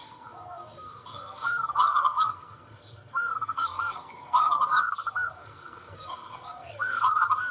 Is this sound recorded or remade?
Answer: remade